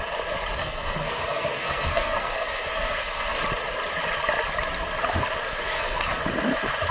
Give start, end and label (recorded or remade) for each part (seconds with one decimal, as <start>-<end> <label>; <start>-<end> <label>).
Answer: 0.0-0.6 recorded; 0.6-3.4 remade; 3.4-5.6 recorded; 5.6-6.2 remade; 6.2-6.9 recorded